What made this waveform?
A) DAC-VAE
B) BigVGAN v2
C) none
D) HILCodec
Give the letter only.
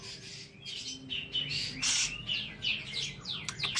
C